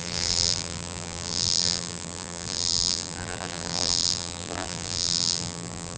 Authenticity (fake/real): fake